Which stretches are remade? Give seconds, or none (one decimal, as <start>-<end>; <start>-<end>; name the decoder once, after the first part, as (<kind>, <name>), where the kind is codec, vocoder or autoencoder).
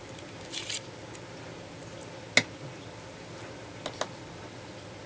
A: none